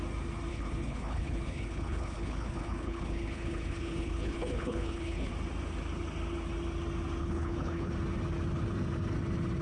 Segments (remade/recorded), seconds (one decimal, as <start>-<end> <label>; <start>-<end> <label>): 0.0-0.5 recorded; 0.5-5.3 remade; 5.3-7.2 recorded; 7.2-7.9 remade; 7.9-9.6 recorded